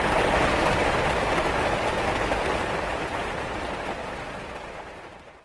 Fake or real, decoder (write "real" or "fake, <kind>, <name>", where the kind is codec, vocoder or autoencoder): real